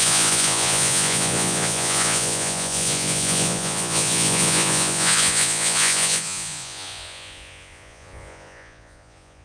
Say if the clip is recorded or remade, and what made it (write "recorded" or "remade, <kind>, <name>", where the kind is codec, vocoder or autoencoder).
remade, vocoder, Vocos